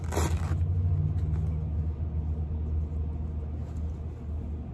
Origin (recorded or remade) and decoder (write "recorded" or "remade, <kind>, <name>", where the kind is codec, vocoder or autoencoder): recorded